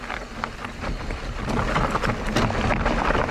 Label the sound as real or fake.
real